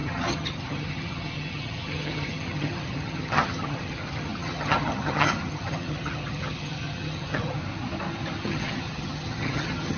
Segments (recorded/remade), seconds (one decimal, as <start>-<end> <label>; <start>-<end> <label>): 0.0-7.6 remade; 7.6-8.4 recorded; 8.4-10.0 remade